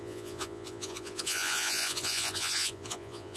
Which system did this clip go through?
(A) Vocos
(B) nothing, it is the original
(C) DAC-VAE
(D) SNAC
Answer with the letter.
A